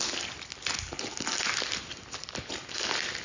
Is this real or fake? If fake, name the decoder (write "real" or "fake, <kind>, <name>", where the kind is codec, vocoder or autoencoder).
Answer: real